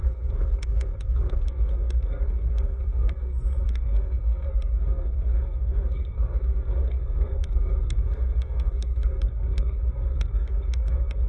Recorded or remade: remade